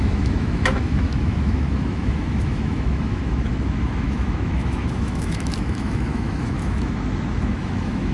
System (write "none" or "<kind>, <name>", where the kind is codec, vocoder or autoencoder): autoencoder, DAC-VAE